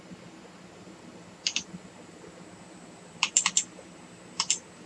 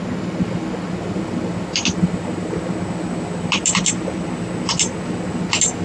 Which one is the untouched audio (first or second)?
second